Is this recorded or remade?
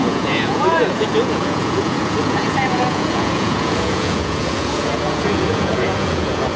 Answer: remade